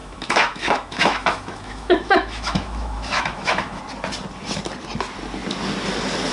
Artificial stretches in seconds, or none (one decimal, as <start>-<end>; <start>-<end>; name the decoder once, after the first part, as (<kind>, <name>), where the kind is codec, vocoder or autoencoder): 0.0-3.8 (autoencoder, DAC-VAE)